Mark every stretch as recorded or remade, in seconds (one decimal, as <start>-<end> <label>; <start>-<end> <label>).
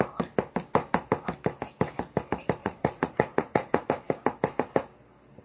0.0-2.6 recorded; 2.6-3.9 remade; 3.9-5.4 recorded